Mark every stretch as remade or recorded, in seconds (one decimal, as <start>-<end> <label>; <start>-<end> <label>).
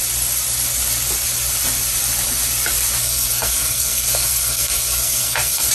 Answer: 0.0-3.0 recorded; 3.0-5.7 remade